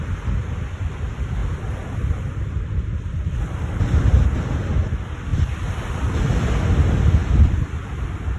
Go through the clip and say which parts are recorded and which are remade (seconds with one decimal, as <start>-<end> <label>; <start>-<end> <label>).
0.0-1.4 recorded; 1.4-4.1 remade; 4.1-5.3 recorded; 5.3-6.2 remade; 6.2-7.2 recorded; 7.2-8.4 remade